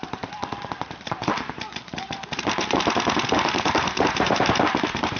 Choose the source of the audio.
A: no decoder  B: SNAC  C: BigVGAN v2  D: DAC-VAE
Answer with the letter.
C